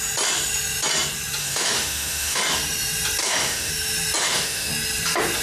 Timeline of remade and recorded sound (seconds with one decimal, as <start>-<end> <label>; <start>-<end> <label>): 0.0-1.4 recorded; 1.4-2.4 remade; 2.4-3.2 recorded; 3.2-3.7 remade; 3.7-4.2 recorded; 4.2-4.7 remade; 4.7-5.4 recorded